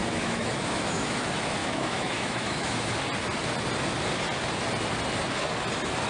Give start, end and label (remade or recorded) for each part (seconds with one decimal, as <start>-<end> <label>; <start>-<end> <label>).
0.0-1.2 remade; 1.2-1.6 recorded; 1.6-3.0 remade; 3.0-6.1 recorded